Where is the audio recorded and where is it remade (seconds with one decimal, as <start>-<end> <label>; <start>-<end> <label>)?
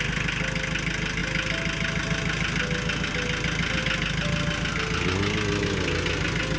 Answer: 0.0-6.6 recorded